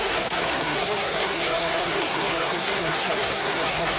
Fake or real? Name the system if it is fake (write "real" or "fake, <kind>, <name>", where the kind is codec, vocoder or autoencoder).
fake, codec, SNAC